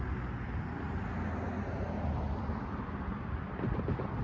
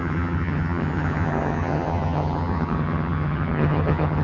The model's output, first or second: second